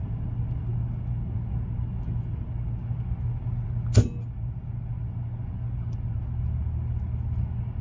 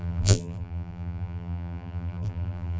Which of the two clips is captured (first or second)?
first